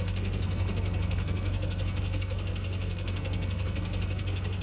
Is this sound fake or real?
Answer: fake